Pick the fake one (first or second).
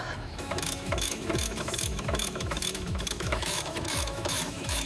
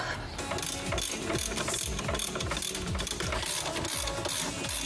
first